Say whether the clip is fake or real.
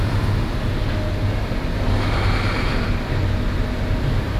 real